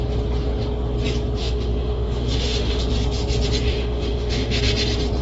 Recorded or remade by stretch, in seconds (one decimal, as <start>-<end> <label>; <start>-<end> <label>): 0.0-1.4 recorded; 1.4-2.9 remade; 2.9-3.7 recorded; 3.7-4.6 remade; 4.6-5.2 recorded